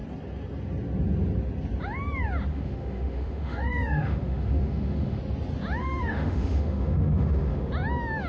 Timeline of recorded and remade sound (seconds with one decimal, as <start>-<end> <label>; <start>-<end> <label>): 0.0-2.5 recorded; 2.5-5.2 remade; 5.2-5.8 recorded; 5.8-7.7 remade; 7.7-8.3 recorded

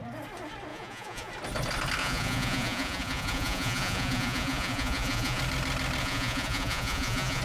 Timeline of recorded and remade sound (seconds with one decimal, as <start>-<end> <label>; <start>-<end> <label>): 0.0-0.7 recorded; 0.7-1.3 remade; 1.3-2.0 recorded; 2.0-5.4 remade; 5.4-6.0 recorded; 6.0-7.4 remade

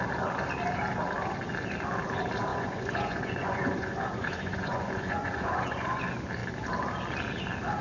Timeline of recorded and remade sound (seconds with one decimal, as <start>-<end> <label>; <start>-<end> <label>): 0.0-2.5 recorded; 2.5-6.0 remade; 6.0-7.8 recorded